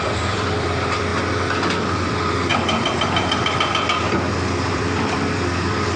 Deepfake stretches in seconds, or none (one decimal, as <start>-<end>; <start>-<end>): 0.0-1.1; 2.1-2.5; 4.7-6.0